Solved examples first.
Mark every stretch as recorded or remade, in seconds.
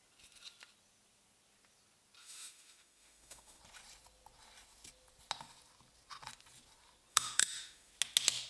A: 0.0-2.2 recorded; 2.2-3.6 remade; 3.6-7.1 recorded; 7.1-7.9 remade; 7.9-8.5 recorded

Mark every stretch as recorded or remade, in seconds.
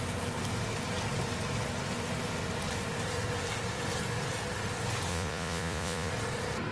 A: 0.0-5.1 recorded; 5.1-6.1 remade; 6.1-6.7 recorded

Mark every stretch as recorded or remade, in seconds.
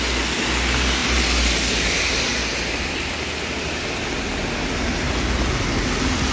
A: 0.0-6.3 recorded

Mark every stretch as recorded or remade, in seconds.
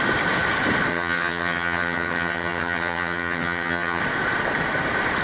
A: 0.0-0.9 recorded; 0.9-4.0 remade; 4.0-5.2 recorded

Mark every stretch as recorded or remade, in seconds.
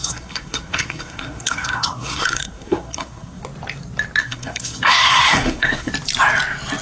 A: 0.0-3.4 remade; 3.4-4.2 recorded; 4.2-5.9 remade; 5.9-6.8 recorded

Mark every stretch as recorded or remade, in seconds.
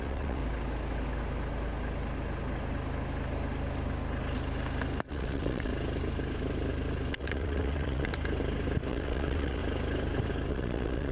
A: 0.0-0.4 remade; 0.4-5.1 recorded; 5.1-5.7 remade; 5.7-7.1 recorded; 7.1-8.1 remade; 8.1-8.9 recorded; 8.9-9.6 remade; 9.6-10.5 recorded; 10.5-11.1 remade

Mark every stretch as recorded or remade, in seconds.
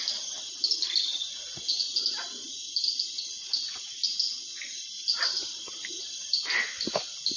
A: 0.0-7.4 recorded